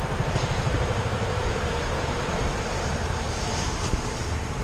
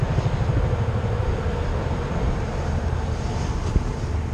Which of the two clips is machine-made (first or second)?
first